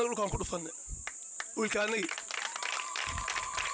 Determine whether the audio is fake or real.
fake